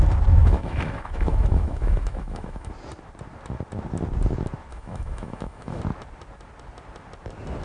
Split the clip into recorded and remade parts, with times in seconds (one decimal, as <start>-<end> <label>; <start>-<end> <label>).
0.0-0.4 recorded; 0.4-2.7 remade; 2.7-4.7 recorded; 4.7-5.8 remade; 5.8-7.6 recorded